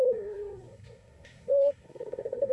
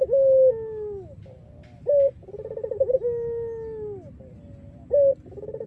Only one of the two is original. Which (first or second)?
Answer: second